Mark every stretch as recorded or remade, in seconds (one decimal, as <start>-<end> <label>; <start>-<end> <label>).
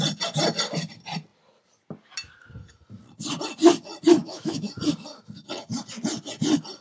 0.0-4.2 recorded; 4.2-4.7 remade; 4.7-6.8 recorded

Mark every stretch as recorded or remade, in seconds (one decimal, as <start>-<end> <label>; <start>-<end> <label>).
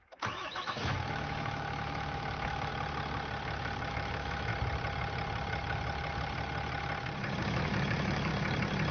0.0-2.7 remade; 2.7-3.9 recorded; 3.9-4.5 remade; 4.5-7.4 recorded; 7.4-8.3 remade; 8.3-8.9 recorded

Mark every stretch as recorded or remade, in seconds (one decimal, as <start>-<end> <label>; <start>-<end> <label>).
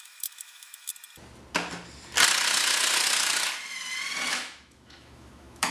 0.0-0.9 remade; 0.9-4.3 recorded; 4.3-5.7 remade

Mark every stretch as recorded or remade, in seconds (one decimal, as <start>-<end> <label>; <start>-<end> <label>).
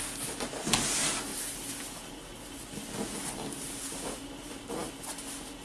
0.0-5.6 recorded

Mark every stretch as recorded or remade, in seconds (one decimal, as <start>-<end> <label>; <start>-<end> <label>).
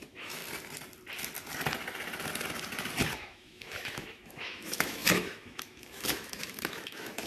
0.0-0.4 remade; 0.4-3.2 recorded; 3.2-7.3 remade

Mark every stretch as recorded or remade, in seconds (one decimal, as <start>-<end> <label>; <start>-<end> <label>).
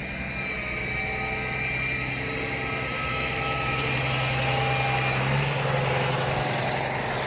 0.0-3.1 recorded; 3.1-3.8 remade; 3.8-7.3 recorded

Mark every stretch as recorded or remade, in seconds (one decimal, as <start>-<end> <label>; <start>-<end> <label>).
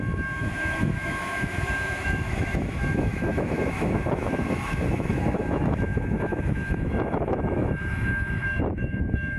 0.0-9.4 remade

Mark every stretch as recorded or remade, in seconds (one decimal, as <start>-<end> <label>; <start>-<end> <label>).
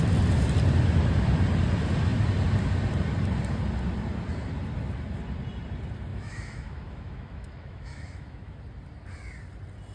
0.0-6.1 recorded; 6.1-8.6 remade; 8.6-9.9 recorded